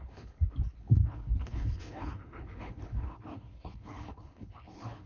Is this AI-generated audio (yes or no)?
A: yes